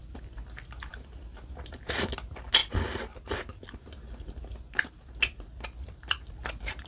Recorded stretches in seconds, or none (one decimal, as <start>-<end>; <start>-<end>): 0.0-6.9